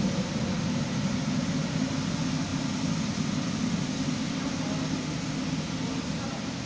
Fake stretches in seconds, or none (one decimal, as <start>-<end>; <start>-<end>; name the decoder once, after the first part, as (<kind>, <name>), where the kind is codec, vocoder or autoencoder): none